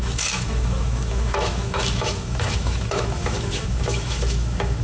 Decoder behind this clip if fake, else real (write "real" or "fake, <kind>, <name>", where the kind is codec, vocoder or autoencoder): fake, autoencoder, DAC-VAE